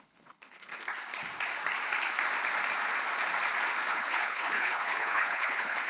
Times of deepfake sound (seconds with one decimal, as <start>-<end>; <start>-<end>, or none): 0.0-0.7; 3.9-5.9